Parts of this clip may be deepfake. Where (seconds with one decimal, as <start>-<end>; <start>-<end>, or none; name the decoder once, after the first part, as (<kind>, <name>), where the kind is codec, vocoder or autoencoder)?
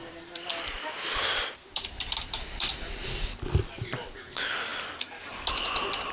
0.0-3.7 (vocoder, BigVGAN v2)